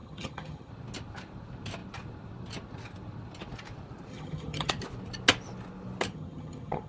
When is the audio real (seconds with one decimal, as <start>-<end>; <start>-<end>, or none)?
0.7-4.1; 4.7-6.1